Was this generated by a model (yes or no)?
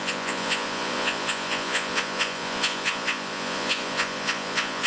yes